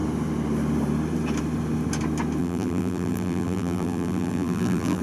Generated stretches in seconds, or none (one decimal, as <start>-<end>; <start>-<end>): 2.4-5.0